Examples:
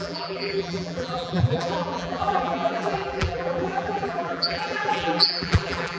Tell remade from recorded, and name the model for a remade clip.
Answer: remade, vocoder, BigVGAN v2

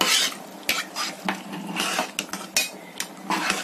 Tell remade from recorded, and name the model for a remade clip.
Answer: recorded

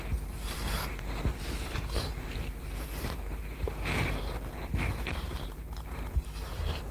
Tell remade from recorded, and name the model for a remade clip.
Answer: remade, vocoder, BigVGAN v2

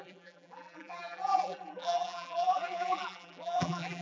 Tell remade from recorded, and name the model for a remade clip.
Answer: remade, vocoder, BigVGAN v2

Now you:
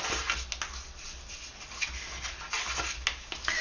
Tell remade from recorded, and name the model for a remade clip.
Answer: recorded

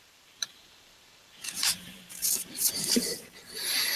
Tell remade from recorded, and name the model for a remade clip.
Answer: remade, vocoder, BigVGAN v2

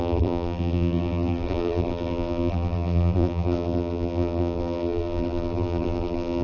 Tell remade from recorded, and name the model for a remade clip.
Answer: remade, vocoder, BigVGAN v2